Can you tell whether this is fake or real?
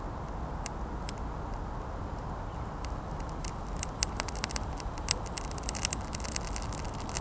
real